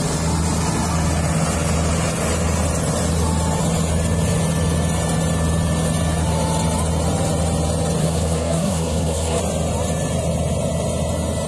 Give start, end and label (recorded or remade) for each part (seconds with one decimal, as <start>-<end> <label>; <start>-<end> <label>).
0.0-8.0 recorded; 8.0-9.4 remade; 9.4-11.5 recorded

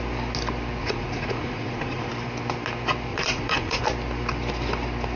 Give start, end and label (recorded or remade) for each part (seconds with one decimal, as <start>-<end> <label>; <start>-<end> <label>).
0.0-0.8 recorded; 0.8-2.1 remade; 2.1-3.1 recorded; 3.1-3.8 remade; 3.8-5.2 recorded

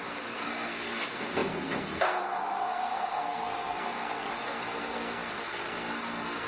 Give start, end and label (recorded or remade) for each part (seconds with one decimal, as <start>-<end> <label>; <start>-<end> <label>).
0.0-6.5 remade

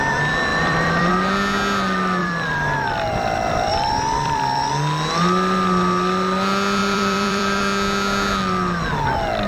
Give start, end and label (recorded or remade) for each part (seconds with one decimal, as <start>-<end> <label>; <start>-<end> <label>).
0.0-0.5 recorded; 0.5-1.1 remade; 1.1-2.2 recorded; 2.2-4.7 remade; 4.7-6.8 recorded; 6.8-7.6 remade; 7.6-9.5 recorded

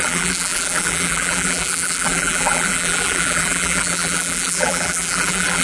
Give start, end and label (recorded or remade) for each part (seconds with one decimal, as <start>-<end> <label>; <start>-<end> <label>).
0.0-5.6 remade

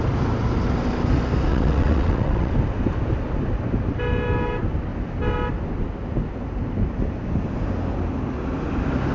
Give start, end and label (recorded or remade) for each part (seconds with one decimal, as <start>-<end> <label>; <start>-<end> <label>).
0.0-1.5 recorded; 1.5-2.5 remade; 2.5-9.1 recorded

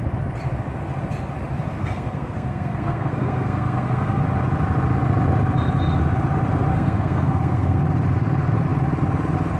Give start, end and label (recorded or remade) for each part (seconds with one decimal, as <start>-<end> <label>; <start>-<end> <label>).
0.0-1.8 recorded; 1.8-4.2 remade; 4.2-6.7 recorded; 6.7-7.8 remade; 7.8-9.6 recorded

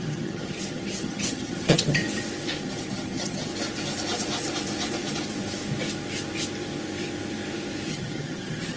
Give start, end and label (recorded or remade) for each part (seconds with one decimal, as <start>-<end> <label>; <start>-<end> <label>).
0.0-2.0 remade; 2.0-2.6 recorded; 2.6-3.5 remade; 3.5-7.9 recorded; 7.9-8.8 remade